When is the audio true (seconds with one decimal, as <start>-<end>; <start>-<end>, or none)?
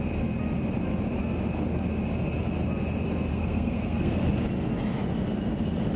0.0-3.3; 4.2-6.0